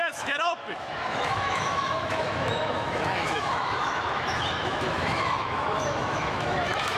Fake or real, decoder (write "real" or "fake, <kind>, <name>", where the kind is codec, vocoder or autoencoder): fake, autoencoder, DAC-VAE